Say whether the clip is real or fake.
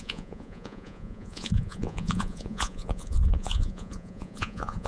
fake